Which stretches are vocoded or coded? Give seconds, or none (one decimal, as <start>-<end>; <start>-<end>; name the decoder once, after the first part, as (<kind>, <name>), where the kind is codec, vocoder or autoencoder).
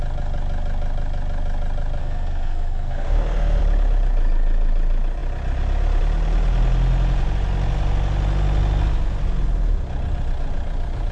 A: 2.0-3.6 (codec, SNAC)